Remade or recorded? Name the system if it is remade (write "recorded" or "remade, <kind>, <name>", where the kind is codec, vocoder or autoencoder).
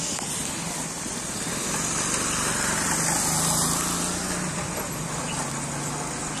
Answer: recorded